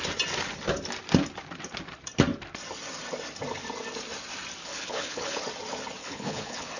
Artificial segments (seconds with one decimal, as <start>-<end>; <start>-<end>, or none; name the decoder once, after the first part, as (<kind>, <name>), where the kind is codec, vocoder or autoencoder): 4.6-5.4 (codec, HILCodec); 6.0-6.8